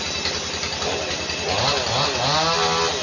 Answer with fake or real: real